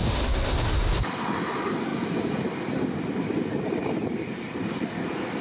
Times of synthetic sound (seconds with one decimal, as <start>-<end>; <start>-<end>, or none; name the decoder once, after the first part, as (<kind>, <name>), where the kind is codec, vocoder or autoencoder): none